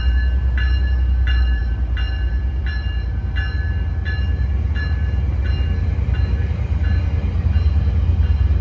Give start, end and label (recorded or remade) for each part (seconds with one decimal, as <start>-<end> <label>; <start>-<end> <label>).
0.0-8.6 recorded